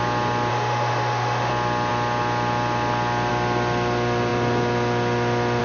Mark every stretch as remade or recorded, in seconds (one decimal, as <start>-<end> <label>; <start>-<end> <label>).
0.0-0.5 recorded; 0.5-1.5 remade; 1.5-5.6 recorded